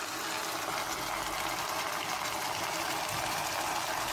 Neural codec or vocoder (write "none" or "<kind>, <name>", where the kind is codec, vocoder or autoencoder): none